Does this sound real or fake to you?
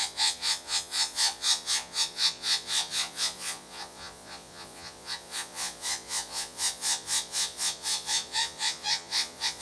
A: fake